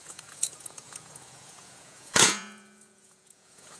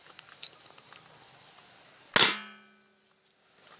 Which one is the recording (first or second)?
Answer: second